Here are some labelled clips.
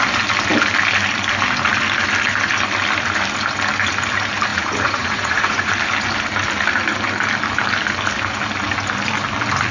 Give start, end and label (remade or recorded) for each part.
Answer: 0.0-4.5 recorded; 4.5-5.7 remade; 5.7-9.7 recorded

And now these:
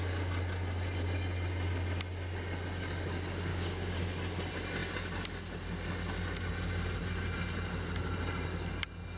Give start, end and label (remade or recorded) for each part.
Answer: 0.0-3.5 recorded; 3.5-4.0 remade; 4.0-9.2 recorded

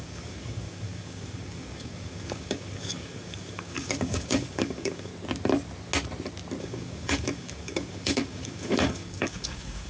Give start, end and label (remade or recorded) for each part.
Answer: 0.0-5.1 remade; 5.1-6.6 recorded; 6.6-9.9 remade

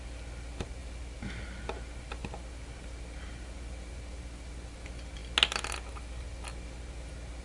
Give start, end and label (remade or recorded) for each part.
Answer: 0.0-7.4 recorded

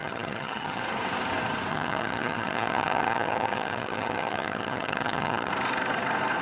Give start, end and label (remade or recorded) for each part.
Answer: 0.0-0.8 remade; 0.8-1.7 recorded; 1.7-5.5 remade; 5.5-6.4 recorded

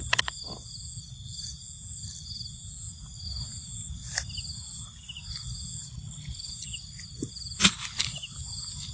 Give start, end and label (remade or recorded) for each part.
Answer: 0.0-5.9 recorded; 5.9-6.5 remade; 6.5-8.9 recorded